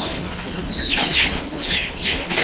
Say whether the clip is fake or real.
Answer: fake